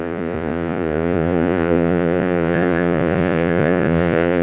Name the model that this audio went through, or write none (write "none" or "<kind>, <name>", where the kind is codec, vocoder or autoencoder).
vocoder, Vocos